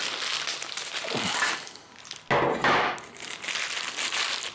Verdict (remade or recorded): recorded